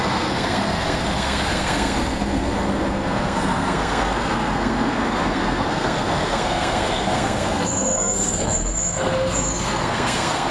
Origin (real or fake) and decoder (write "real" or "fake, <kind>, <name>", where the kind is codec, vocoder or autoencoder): fake, codec, SNAC